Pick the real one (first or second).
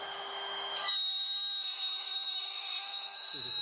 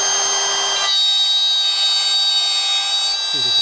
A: second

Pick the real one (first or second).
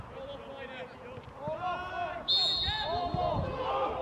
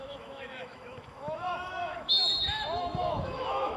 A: first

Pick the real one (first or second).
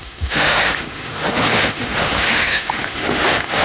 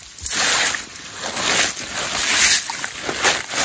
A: second